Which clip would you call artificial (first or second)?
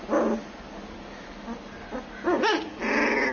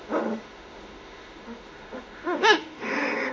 second